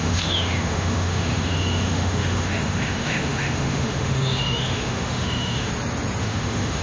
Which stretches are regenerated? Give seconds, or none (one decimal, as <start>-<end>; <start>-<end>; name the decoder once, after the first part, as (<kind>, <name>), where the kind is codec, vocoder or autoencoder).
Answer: 0.0-5.7 (autoencoder, DAC-VAE); 6.2-6.8